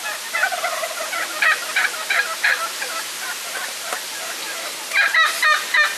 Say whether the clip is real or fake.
real